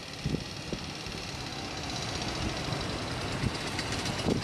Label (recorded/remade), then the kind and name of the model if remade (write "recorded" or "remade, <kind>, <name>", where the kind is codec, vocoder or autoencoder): recorded